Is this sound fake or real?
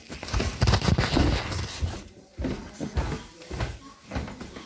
real